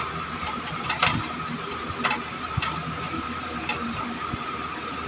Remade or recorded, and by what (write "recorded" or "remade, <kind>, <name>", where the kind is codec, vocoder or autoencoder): remade, vocoder, BigVGAN v2